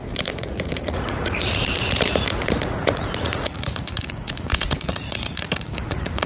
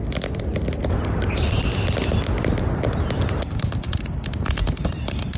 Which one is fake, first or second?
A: first